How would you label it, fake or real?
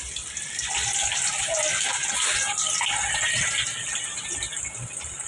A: real